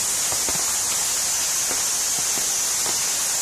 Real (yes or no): yes